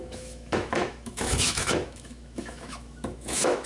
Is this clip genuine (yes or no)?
no